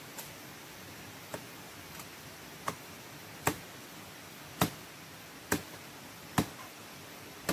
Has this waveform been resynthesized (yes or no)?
no